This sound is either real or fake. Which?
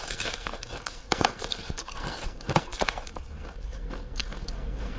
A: fake